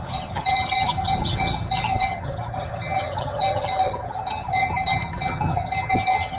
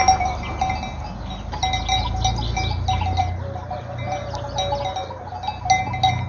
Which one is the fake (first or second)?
first